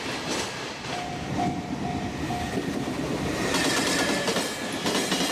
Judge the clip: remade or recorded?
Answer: recorded